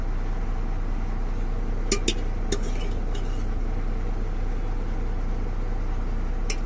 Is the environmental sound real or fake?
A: real